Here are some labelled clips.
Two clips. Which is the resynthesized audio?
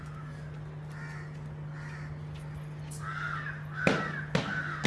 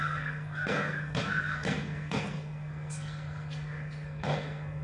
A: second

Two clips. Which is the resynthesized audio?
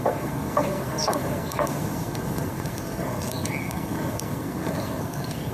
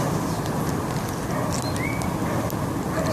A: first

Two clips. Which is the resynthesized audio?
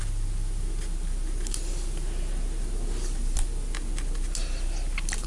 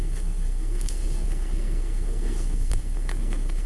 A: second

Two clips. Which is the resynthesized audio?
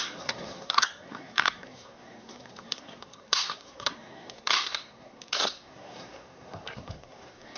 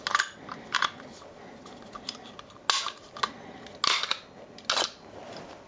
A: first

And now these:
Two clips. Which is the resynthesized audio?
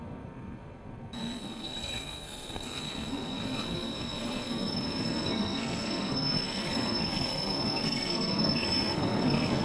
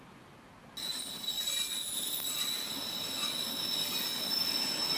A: first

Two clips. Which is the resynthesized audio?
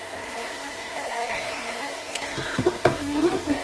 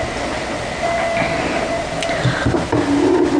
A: first